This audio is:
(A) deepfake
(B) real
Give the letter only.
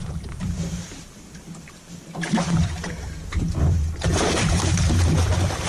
A